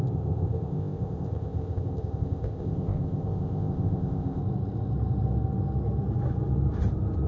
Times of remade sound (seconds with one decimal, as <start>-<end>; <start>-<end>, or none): 0.0-4.4